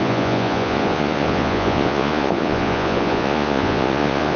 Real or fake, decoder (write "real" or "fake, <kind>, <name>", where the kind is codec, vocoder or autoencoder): fake, vocoder, Vocos